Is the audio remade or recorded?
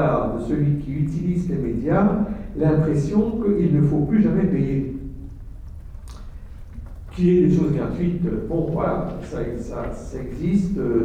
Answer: recorded